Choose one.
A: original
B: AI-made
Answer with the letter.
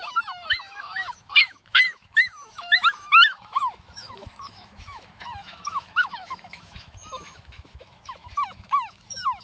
B